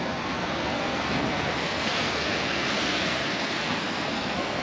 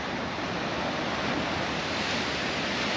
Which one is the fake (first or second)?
first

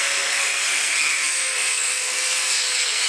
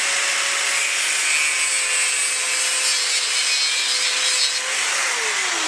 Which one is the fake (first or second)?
first